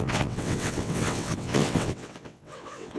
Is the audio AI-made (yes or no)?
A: yes